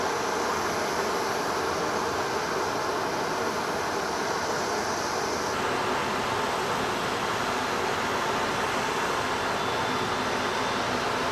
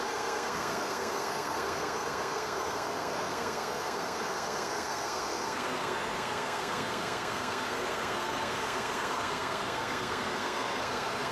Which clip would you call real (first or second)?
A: first